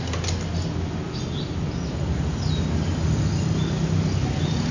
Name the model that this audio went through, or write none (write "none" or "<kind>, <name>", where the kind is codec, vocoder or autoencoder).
none